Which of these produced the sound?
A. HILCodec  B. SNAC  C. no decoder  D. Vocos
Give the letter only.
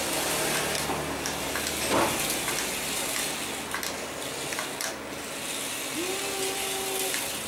C